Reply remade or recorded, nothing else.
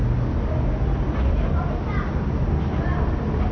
recorded